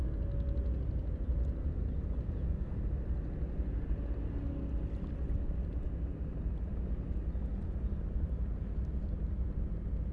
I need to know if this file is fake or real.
real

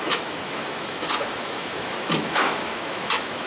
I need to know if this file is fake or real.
fake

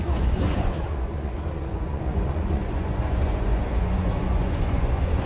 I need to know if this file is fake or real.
fake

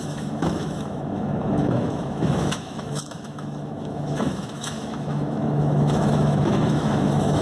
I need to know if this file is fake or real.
fake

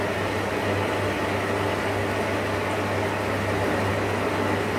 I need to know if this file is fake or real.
real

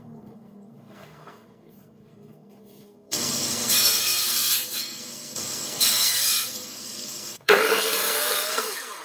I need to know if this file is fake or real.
fake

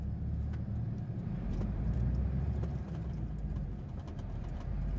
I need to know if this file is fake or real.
fake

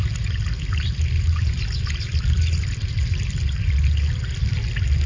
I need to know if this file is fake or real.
real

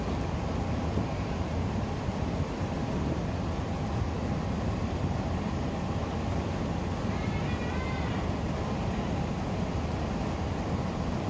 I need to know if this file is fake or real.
real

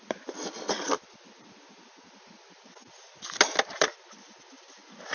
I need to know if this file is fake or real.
real